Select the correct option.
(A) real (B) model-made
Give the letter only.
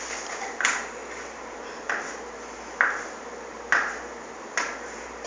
B